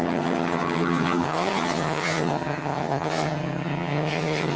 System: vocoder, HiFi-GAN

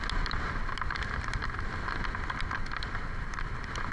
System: none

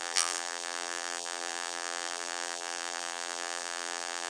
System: vocoder, BigVGAN v2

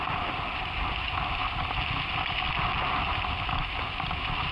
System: none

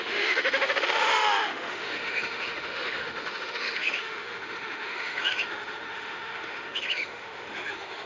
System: autoencoder, DAC-VAE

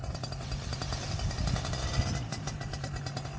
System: none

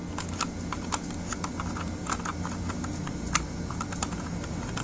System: none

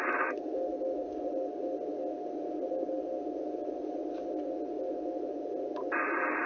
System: none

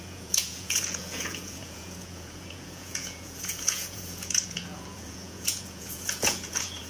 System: vocoder, Vocos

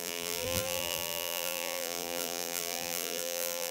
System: vocoder, BigVGAN v2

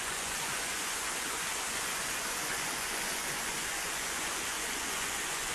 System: vocoder, Vocos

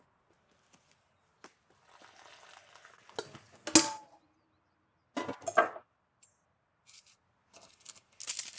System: none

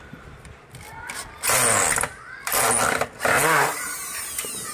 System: none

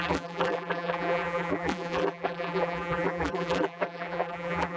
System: vocoder, BigVGAN v2